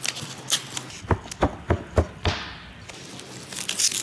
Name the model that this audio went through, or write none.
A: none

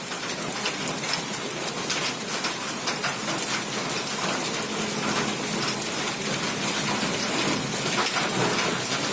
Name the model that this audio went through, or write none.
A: none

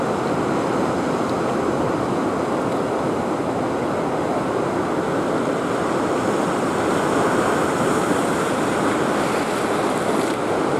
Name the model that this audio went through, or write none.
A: none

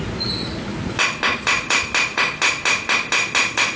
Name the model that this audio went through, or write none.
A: none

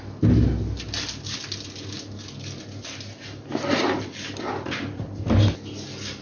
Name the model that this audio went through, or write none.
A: none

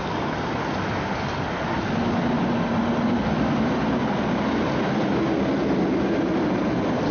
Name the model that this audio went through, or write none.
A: none